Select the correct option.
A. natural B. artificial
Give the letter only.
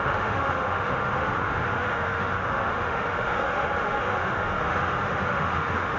B